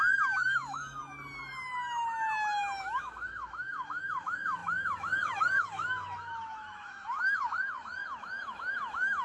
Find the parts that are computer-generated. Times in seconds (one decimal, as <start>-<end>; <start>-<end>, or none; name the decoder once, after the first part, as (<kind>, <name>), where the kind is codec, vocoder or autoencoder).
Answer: 0.0-1.0 (autoencoder, DAC-VAE); 2.8-9.2